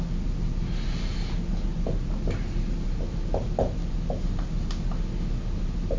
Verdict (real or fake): real